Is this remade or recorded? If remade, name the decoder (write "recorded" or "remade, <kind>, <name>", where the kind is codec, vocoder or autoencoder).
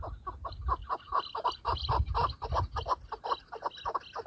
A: recorded